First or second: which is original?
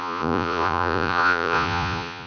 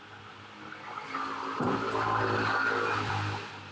second